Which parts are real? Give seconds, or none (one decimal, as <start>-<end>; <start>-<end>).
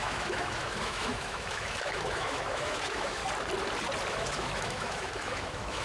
3.2-4.1